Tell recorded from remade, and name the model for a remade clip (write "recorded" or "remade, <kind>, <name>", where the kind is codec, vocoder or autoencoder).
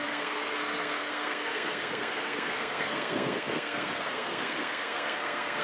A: remade, codec, SNAC